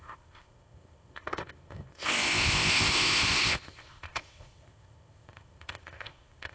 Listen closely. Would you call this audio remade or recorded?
remade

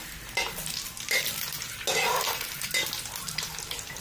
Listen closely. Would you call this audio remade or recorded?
recorded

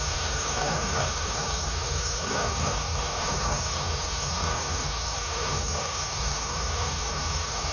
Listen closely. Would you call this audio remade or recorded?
remade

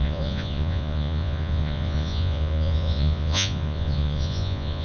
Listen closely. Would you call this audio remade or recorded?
remade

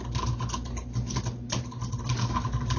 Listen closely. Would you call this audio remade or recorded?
recorded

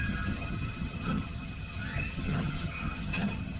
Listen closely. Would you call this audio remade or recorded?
remade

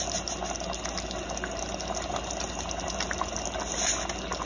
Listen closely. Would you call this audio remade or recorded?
recorded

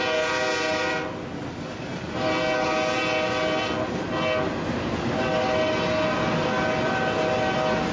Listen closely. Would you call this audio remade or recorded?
recorded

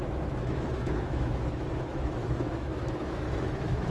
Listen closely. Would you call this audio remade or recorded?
remade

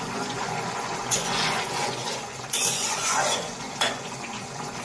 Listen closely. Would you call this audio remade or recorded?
remade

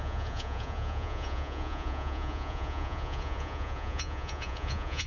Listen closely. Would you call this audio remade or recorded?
remade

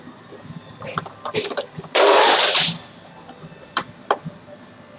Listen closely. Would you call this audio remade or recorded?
recorded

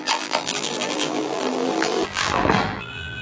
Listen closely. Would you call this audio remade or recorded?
remade